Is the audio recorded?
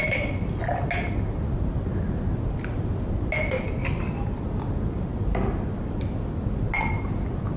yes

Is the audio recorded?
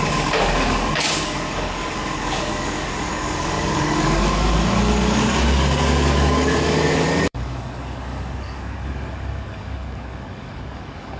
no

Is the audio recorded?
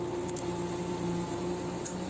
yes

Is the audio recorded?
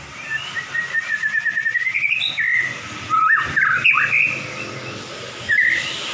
no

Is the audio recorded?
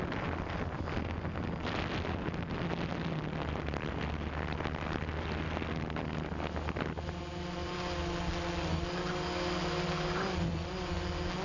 yes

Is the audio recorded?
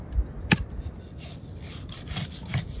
no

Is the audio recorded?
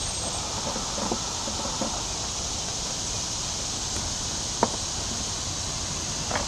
yes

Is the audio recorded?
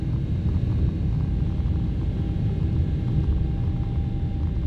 yes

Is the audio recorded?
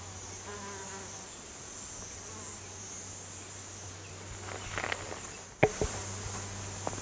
yes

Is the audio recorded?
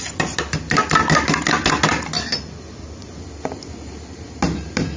yes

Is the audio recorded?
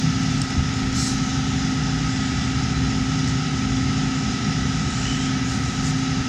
yes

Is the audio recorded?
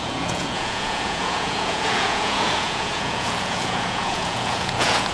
no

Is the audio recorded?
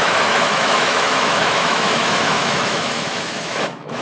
no